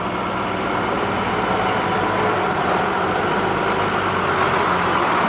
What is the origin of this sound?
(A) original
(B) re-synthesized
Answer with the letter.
A